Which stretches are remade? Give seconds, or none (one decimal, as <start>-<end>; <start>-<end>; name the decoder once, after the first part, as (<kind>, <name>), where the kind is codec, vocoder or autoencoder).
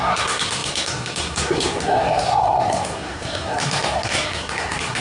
0.0-5.0 (codec, SNAC)